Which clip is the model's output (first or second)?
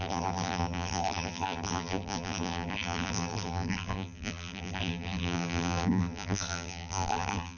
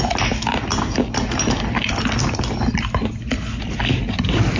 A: first